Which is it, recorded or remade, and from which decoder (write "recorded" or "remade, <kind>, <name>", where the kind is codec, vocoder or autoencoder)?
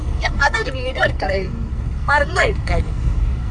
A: remade, codec, SNAC